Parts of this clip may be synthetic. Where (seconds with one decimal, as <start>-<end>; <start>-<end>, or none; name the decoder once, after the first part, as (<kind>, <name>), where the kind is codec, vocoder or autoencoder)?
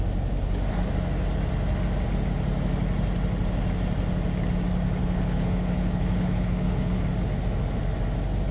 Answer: 5.0-7.0 (codec, HILCodec)